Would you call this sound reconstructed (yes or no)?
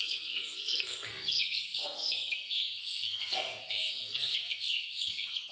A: yes